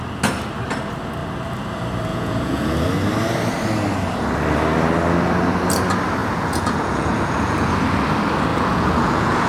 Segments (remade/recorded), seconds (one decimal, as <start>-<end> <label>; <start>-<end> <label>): 0.0-2.1 recorded; 2.1-2.9 remade; 2.9-6.2 recorded; 6.2-7.7 remade; 7.7-8.5 recorded; 8.5-9.5 remade